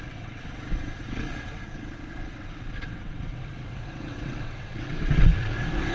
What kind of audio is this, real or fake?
fake